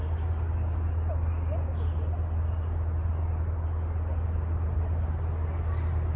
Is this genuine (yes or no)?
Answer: yes